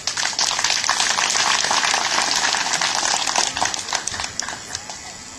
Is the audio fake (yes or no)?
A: no